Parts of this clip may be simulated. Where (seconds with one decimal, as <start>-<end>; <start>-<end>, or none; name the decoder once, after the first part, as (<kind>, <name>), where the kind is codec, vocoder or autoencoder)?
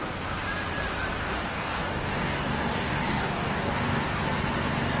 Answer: 1.2-4.2 (codec, DAC)